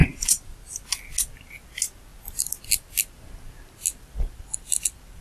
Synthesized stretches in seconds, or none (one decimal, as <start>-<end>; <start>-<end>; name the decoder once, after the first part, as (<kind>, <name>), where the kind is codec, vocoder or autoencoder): 0.0-0.6 (vocoder, BigVGAN v2)